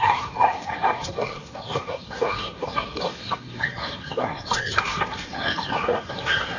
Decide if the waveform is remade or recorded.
remade